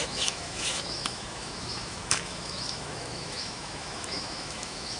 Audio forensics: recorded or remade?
remade